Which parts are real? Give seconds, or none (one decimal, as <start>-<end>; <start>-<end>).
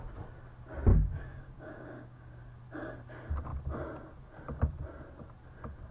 0.0-0.9; 2.4-5.9